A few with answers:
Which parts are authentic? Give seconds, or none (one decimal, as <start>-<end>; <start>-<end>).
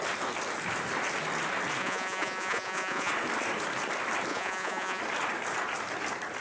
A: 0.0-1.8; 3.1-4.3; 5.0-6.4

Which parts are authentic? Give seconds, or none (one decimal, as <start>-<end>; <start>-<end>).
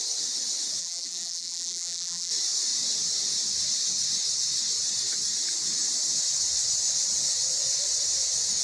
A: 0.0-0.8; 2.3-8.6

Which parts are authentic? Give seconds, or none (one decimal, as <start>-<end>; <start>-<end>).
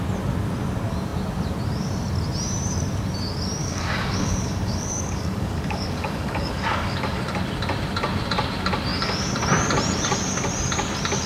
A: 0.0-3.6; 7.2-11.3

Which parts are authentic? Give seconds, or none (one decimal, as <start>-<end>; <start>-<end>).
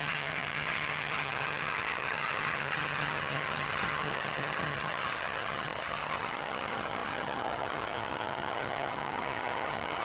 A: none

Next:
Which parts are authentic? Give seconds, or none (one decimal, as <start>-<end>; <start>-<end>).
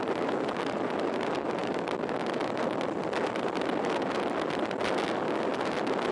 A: none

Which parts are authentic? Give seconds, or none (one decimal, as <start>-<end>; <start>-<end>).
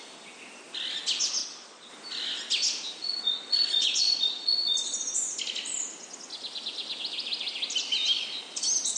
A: 0.0-1.4; 1.9-3.0; 5.4-9.0